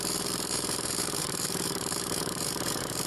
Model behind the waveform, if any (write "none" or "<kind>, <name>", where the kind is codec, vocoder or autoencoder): vocoder, BigVGAN v2